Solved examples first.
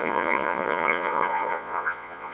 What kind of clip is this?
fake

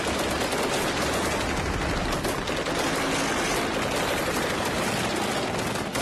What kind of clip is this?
real